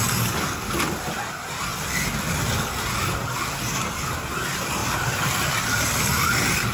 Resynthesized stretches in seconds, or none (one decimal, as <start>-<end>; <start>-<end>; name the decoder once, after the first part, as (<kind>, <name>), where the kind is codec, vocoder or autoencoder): 4.8-5.5 (vocoder, BigVGAN v2)